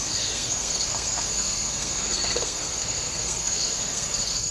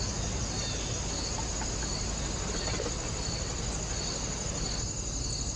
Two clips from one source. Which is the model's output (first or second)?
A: first